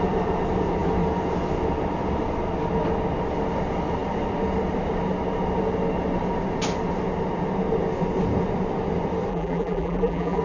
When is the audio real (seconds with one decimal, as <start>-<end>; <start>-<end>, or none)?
0.0-9.3